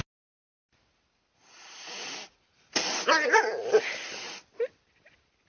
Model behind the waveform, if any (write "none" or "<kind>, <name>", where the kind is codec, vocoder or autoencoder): none